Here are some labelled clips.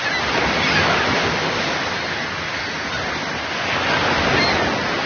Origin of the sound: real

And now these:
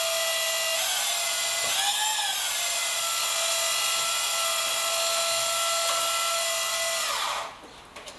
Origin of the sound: real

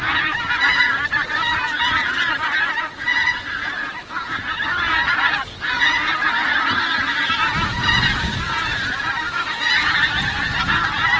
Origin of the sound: fake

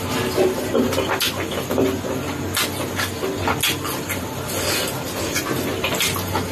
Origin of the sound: real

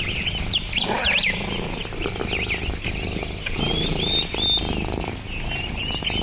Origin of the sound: real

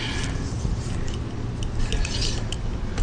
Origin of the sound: real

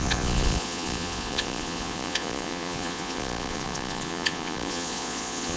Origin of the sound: fake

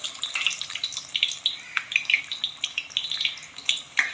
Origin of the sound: real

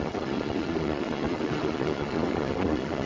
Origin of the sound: fake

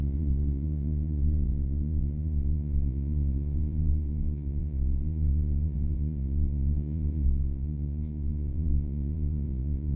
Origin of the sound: fake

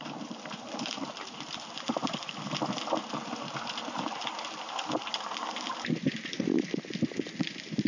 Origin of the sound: real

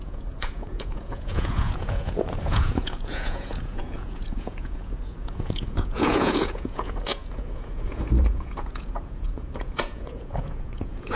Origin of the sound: fake